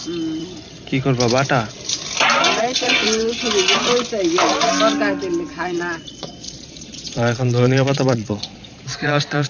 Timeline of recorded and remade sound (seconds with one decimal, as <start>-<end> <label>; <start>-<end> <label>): 0.0-2.6 recorded; 2.6-3.2 remade; 3.2-5.5 recorded; 5.5-9.5 remade